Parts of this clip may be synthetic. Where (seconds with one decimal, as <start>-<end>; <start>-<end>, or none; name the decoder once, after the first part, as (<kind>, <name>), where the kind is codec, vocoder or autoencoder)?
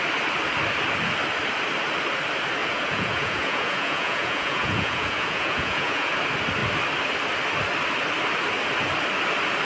2.6-6.1 (vocoder, Vocos)